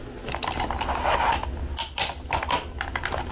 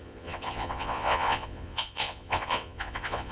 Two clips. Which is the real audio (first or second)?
first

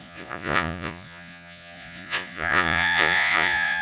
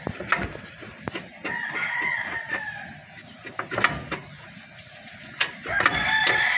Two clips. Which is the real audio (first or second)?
second